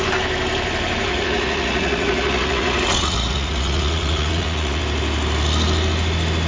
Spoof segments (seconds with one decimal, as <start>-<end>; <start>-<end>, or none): 1.1-4.8